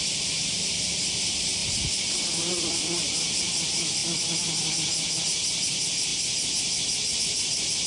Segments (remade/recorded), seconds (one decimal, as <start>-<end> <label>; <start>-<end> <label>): 0.0-1.6 remade; 1.6-2.3 recorded; 2.3-4.0 remade; 4.0-5.2 recorded; 5.2-6.1 remade; 6.1-7.2 recorded; 7.2-7.9 remade

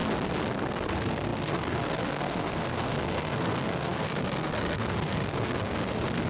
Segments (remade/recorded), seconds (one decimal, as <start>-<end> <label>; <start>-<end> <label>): 0.0-0.5 recorded; 0.5-6.3 remade

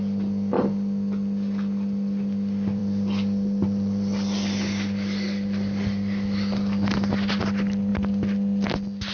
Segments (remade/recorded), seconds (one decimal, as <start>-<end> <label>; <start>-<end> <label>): 0.0-2.8 recorded; 2.8-7.4 remade; 7.4-9.1 recorded

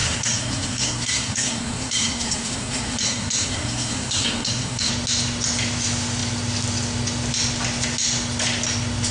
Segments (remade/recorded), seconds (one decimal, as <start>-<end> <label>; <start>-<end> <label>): 0.0-4.9 remade; 4.9-9.1 recorded